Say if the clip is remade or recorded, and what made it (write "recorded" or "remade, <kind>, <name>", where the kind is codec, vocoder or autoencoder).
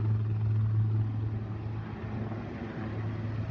recorded